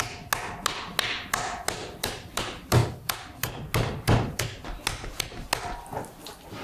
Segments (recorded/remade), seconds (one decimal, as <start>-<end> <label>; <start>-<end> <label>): 0.0-1.8 recorded; 1.8-2.4 remade; 2.4-6.6 recorded